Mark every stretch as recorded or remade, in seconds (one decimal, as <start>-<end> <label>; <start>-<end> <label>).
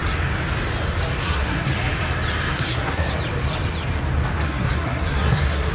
0.0-1.2 recorded; 1.2-1.7 remade; 1.7-2.5 recorded; 2.5-3.1 remade; 3.1-4.4 recorded; 4.4-5.7 remade